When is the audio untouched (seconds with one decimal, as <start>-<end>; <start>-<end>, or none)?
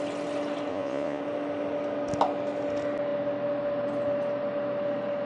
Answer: 0.0-0.7; 1.2-5.2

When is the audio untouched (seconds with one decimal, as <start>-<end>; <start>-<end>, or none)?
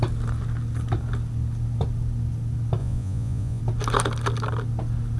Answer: 0.0-2.8; 3.6-5.2